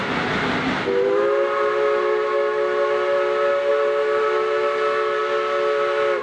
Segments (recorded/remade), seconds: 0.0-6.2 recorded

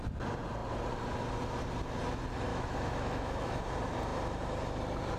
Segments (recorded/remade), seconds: 0.0-2.5 recorded; 2.5-3.6 remade; 3.6-5.2 recorded